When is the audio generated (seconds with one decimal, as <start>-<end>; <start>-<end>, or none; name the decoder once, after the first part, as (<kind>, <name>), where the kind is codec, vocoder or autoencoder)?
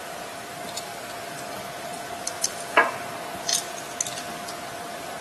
0.0-3.5 (vocoder, BigVGAN v2)